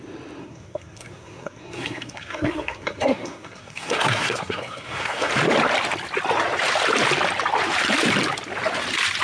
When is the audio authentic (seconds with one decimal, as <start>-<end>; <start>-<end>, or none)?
0.0-0.4; 5.3-9.2